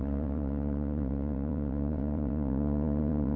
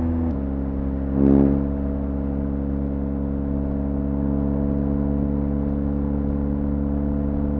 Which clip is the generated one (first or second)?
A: first